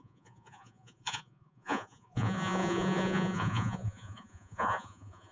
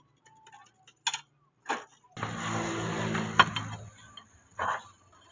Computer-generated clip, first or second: first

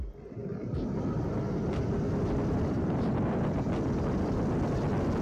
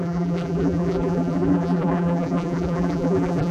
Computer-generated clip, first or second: second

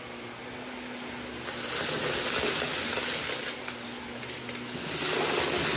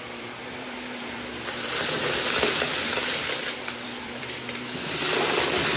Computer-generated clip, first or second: second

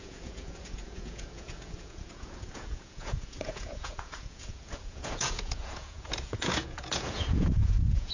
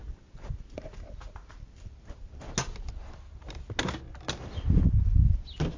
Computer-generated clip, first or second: first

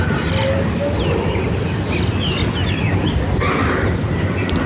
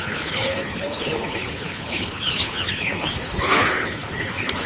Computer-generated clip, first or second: second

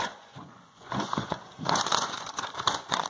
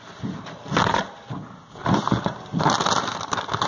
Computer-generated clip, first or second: first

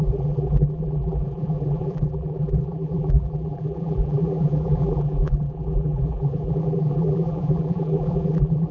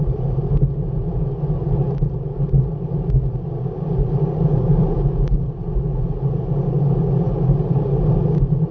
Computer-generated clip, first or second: first